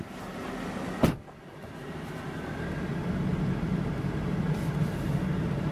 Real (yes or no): yes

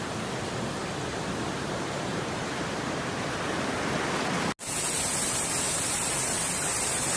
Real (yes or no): yes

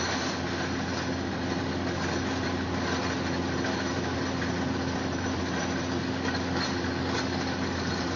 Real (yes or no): yes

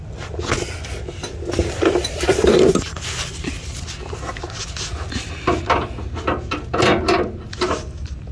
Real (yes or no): yes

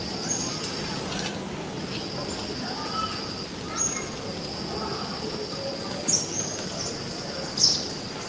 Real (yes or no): yes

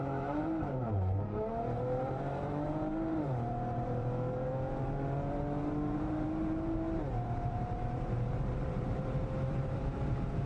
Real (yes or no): no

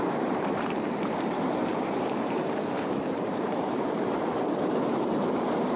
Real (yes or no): no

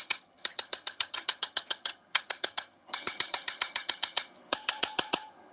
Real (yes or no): no